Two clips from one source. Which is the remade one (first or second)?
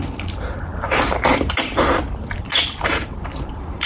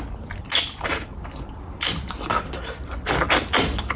first